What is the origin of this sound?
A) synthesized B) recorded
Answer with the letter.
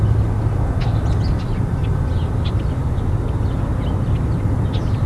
B